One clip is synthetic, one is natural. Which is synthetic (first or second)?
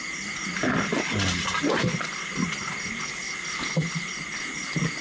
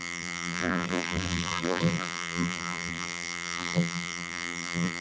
second